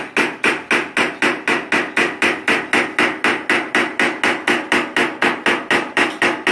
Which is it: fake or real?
real